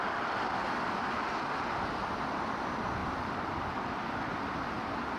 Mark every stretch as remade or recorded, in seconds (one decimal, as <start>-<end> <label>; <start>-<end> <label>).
0.0-3.0 recorded; 3.0-5.2 remade